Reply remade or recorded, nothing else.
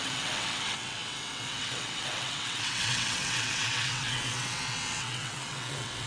remade